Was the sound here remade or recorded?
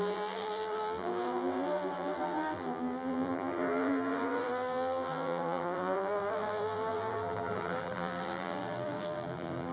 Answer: remade